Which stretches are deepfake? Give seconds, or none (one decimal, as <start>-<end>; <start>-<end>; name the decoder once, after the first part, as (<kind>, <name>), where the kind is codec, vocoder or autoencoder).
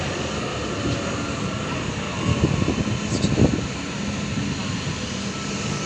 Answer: 0.0-0.5 (codec, DAC); 1.4-2.3; 5.5-5.9